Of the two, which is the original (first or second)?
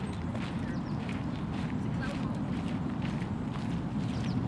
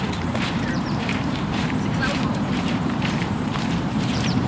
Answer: first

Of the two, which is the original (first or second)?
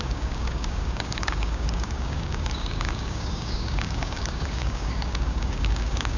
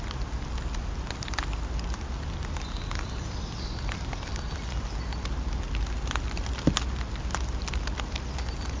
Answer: second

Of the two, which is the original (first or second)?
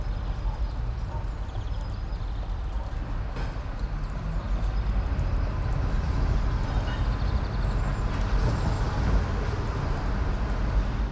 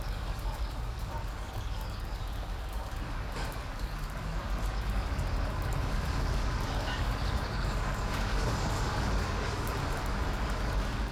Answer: first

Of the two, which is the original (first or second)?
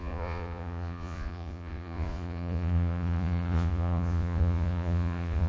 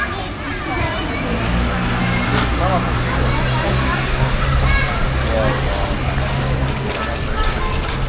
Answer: second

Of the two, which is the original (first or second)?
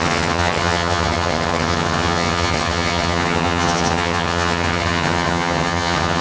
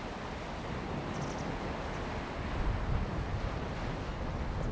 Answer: second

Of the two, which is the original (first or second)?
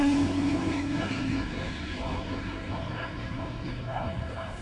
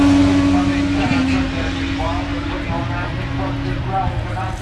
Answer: second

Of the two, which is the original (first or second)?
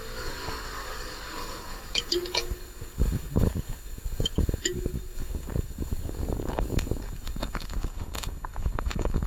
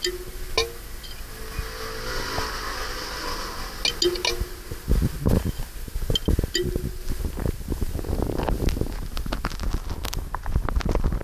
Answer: second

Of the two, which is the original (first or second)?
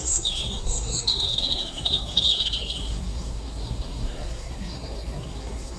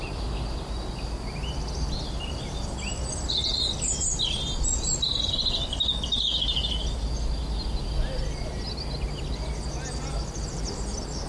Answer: second